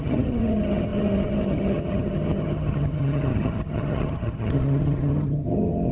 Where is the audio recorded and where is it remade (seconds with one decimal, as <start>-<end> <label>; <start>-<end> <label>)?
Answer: 0.0-5.9 remade